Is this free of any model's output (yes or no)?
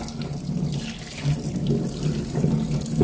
yes